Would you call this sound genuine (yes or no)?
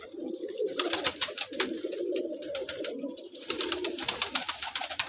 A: no